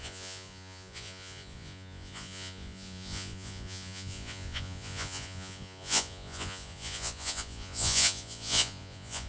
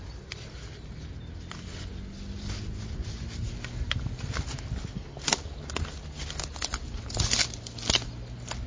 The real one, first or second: second